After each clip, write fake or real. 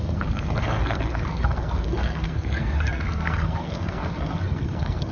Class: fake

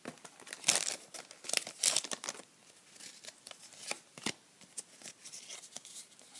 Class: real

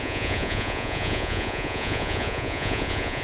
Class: fake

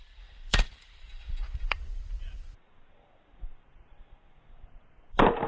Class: fake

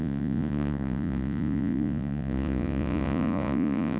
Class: fake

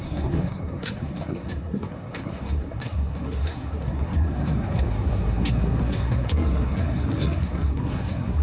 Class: fake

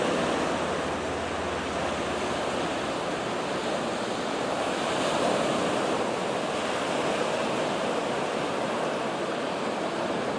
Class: real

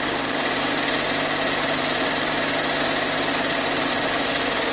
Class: real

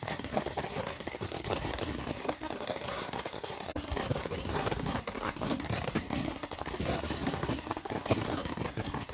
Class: fake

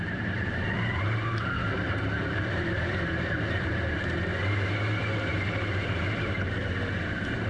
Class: fake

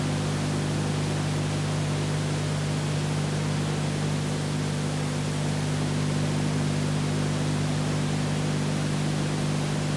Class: real